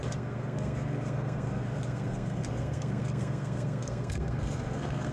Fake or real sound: fake